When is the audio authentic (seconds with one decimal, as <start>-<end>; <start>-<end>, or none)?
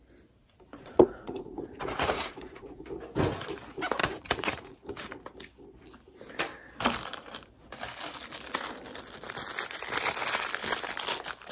0.0-0.7; 2.8-4.0; 4.8-11.5